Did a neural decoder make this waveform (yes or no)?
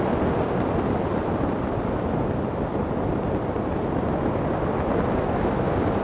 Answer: no